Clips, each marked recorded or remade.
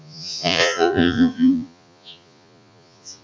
remade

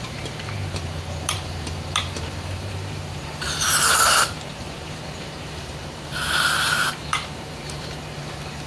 remade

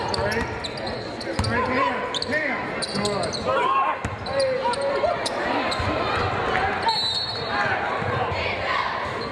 recorded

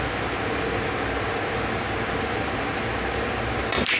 recorded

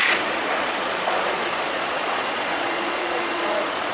remade